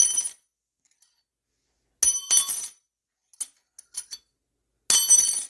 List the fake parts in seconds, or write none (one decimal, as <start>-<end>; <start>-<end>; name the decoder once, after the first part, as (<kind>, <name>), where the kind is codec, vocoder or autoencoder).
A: none